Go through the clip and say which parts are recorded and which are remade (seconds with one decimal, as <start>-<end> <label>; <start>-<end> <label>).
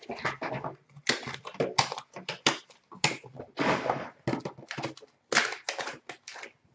0.0-6.7 recorded